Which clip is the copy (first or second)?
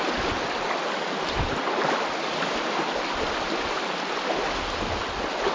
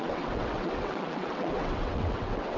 second